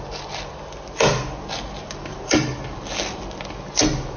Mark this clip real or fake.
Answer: real